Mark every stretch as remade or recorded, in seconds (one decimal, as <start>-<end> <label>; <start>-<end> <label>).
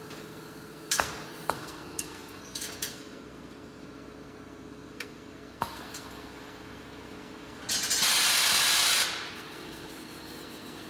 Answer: 0.0-7.6 remade; 7.6-9.3 recorded; 9.3-10.9 remade